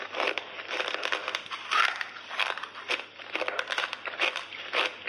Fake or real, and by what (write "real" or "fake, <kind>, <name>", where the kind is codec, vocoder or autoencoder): fake, vocoder, BigVGAN v2